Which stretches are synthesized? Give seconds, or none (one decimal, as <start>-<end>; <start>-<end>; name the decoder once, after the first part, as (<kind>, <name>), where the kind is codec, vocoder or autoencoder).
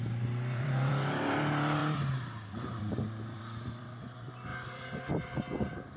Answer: 0.0-1.8 (vocoder, BigVGAN v2); 2.6-6.0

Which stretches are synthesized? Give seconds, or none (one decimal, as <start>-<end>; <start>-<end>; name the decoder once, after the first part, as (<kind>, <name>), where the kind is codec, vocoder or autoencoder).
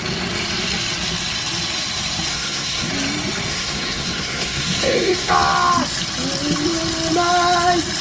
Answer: 2.3-2.9 (codec, SNAC); 3.5-5.3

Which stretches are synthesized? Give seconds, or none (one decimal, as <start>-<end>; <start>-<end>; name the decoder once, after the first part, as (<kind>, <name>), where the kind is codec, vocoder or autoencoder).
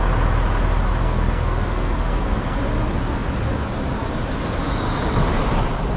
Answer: 1.0-2.6 (codec, SNAC)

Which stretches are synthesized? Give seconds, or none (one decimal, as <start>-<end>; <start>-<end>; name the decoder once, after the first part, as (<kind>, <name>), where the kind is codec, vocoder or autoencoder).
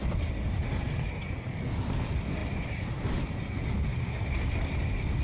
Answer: 0.0-0.6 (vocoder, BigVGAN v2)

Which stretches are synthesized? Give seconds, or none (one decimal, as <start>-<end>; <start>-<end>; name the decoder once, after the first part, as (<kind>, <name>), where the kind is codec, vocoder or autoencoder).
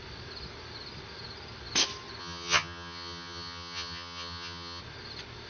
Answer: 2.2-4.8 (vocoder, HiFi-GAN)